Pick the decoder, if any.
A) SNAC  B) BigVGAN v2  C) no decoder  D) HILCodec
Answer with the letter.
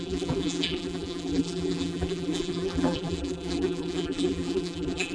B